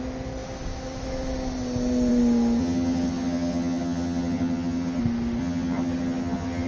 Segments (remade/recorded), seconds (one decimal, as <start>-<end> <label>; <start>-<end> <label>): 0.0-2.6 recorded; 2.6-5.0 remade; 5.0-5.4 recorded; 5.4-6.7 remade